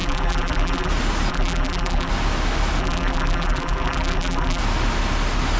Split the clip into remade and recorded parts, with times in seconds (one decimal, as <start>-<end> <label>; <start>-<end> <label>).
0.0-0.9 remade; 0.9-1.3 recorded; 1.3-2.1 remade; 2.1-2.8 recorded; 2.8-4.6 remade; 4.6-5.6 recorded